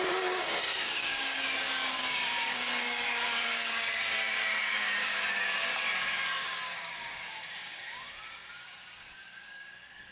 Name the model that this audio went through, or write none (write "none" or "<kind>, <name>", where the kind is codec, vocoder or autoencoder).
codec, DAC